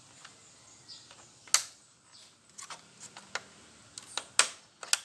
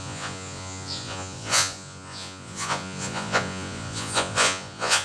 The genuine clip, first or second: first